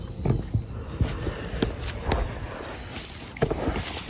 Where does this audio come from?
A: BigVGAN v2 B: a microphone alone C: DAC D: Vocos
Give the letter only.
B